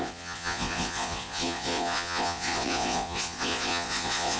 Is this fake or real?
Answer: fake